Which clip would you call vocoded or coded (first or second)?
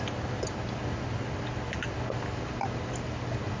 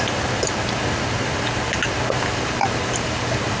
second